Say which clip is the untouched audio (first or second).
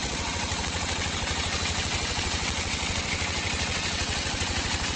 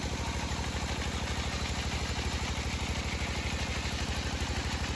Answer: second